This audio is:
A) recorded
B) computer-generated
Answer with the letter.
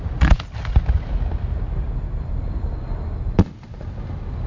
A